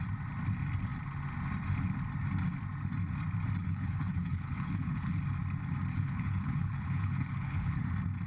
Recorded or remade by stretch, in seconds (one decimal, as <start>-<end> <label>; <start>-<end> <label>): 0.0-3.6 recorded; 3.6-5.2 remade; 5.2-5.9 recorded; 5.9-7.8 remade; 7.8-8.3 recorded